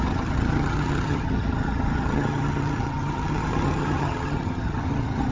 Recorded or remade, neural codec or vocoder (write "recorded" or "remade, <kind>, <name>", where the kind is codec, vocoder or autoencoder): remade, vocoder, HiFi-GAN